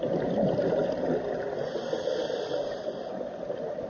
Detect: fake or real real